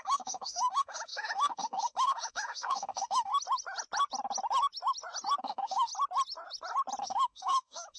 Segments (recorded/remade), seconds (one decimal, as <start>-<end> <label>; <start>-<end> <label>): 0.0-3.3 remade; 3.3-5.4 recorded; 5.4-5.9 remade; 5.9-7.0 recorded; 7.0-8.0 remade